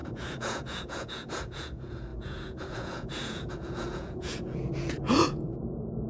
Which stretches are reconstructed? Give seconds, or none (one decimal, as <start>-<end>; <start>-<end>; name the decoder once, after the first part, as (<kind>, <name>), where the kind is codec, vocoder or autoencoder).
0.0-6.1 (vocoder, Vocos)